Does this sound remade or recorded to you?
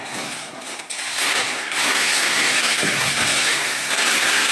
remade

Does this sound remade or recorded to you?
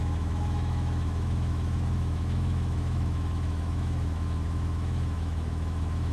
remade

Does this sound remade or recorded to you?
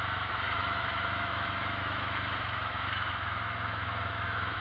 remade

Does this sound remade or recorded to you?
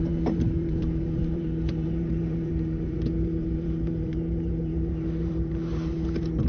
remade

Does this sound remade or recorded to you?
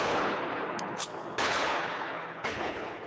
remade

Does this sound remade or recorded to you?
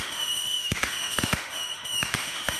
remade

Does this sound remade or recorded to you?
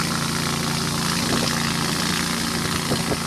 recorded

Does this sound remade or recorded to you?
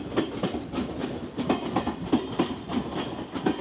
recorded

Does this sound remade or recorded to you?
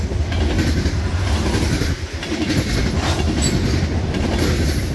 recorded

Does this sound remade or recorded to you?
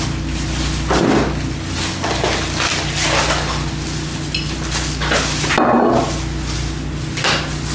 recorded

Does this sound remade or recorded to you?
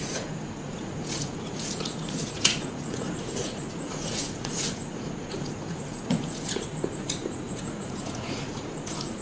remade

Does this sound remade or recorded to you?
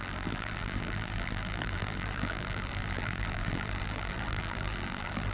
remade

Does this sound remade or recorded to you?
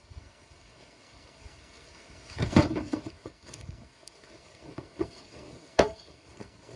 remade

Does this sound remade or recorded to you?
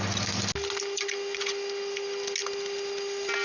recorded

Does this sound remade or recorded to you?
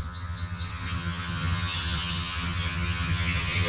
remade